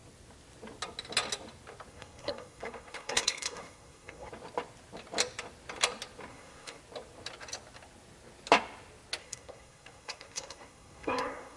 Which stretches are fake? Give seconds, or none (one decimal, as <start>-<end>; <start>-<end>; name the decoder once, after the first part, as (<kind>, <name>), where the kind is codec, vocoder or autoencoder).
1.9-4.3 (codec, SNAC); 6.3-6.8; 9.2-11.6